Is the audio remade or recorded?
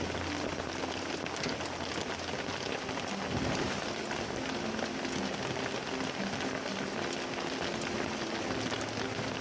recorded